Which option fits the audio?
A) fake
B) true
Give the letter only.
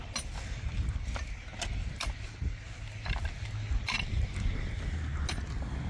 B